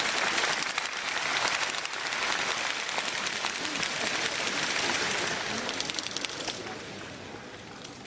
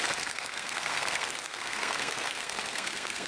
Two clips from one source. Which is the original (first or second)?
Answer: first